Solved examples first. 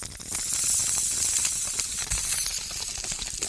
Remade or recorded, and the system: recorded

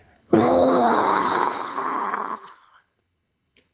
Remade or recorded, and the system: remade, codec, HILCodec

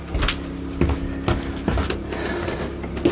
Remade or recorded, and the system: recorded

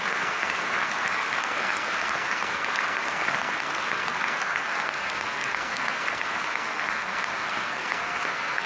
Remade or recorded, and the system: remade, codec, SNAC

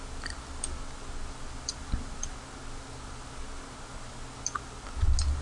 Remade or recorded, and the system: recorded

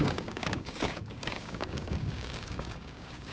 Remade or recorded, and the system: remade, codec, DAC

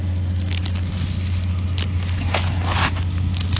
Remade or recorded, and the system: recorded